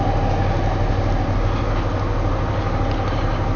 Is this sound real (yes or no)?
yes